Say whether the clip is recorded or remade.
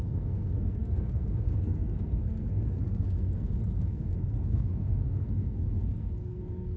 remade